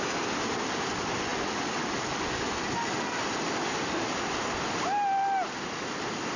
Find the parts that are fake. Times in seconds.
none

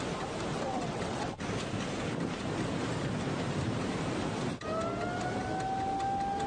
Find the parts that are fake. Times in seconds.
0.5-1.4 (vocoder, WaveNeXt)

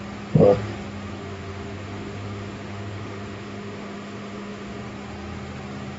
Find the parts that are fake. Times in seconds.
1.2-4.8 (autoencoder, DAC-VAE)

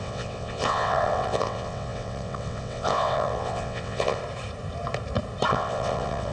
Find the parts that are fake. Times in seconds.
0.0-4.2 (vocoder, WaveNeXt); 5.5-6.3

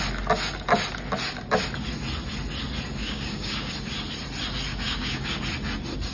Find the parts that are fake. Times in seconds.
3.0-3.7 (codec, DAC); 4.7-5.4

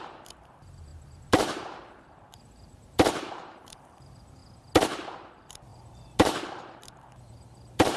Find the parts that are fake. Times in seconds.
0.0-4.4 (vocoder, BigVGAN v2); 5.3-8.0

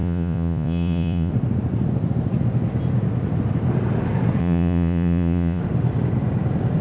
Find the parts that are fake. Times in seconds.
0.0-1.3 (vocoder, Vocos); 4.4-5.6

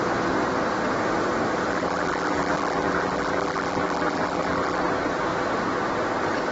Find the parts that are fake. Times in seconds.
1.7-4.8 (vocoder, BigVGAN v2)